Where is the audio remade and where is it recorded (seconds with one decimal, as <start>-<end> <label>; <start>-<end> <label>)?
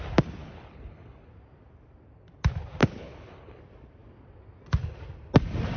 0.0-0.4 recorded; 0.4-1.3 remade; 1.3-2.8 recorded; 2.8-3.6 remade; 3.6-5.8 recorded